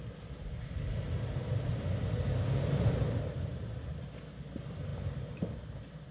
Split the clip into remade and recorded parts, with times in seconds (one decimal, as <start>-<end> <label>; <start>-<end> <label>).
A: 0.0-4.9 recorded; 4.9-5.6 remade; 5.6-6.1 recorded